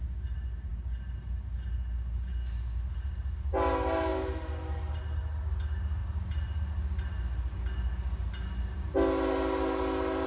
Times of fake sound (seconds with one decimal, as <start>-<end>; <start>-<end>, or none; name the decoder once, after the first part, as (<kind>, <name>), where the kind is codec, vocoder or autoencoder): none